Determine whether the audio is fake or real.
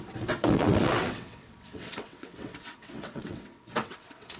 fake